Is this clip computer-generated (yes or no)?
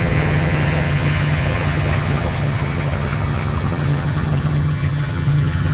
yes